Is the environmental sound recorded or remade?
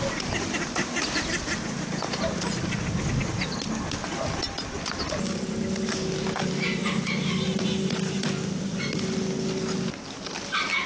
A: recorded